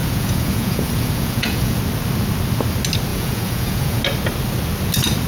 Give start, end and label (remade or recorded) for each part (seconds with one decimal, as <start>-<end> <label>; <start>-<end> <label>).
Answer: 0.0-1.8 remade; 1.8-3.1 recorded; 3.1-4.0 remade; 4.0-5.3 recorded